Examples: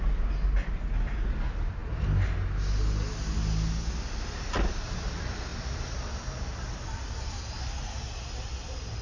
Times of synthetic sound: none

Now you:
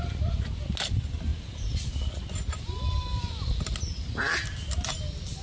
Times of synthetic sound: 1.3-1.9 (vocoder, BigVGAN v2)

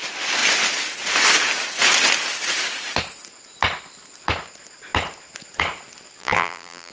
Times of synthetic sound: 6.2-6.9 (vocoder, BigVGAN v2)

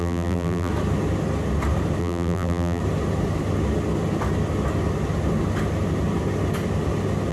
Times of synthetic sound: 0.0-0.7 (vocoder, BigVGAN v2); 2.0-2.8

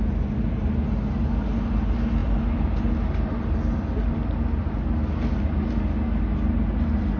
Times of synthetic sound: none

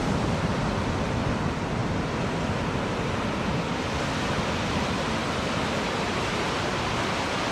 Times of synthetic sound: 0.0-0.9 (vocoder, BigVGAN v2); 1.8-2.7; 5.2-5.9

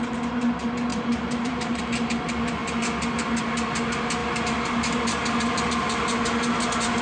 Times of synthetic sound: 0.9-1.8 (vocoder, BigVGAN v2)

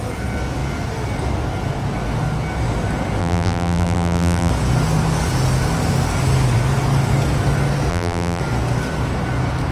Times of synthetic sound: 3.2-4.5 (vocoder, BigVGAN v2); 7.9-8.4